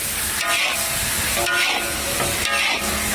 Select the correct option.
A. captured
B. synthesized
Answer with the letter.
A